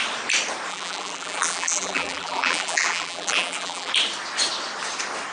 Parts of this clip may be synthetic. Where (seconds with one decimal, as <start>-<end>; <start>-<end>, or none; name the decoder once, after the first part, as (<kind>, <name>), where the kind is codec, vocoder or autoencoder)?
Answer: 0.7-3.9 (vocoder, BigVGAN v2)